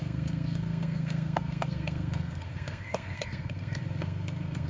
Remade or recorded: remade